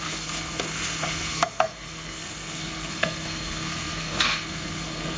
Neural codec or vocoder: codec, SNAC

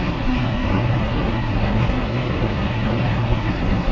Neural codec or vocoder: codec, SNAC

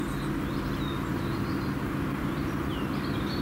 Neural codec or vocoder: none